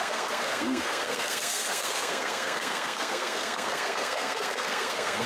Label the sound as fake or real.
fake